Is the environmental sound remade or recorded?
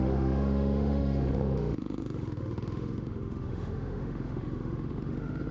remade